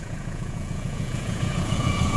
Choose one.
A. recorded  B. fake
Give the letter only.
B